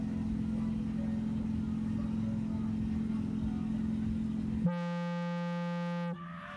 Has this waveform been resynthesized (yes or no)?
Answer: no